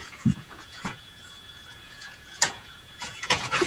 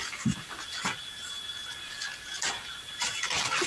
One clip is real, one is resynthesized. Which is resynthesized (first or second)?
first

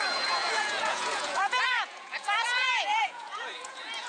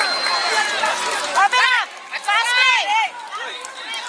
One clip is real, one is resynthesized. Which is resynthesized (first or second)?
first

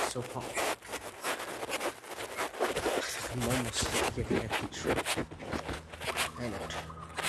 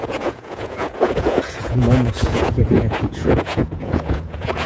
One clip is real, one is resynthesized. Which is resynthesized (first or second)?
second